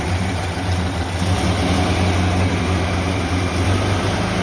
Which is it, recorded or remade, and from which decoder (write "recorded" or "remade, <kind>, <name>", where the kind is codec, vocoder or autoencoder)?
remade, vocoder, BigVGAN v2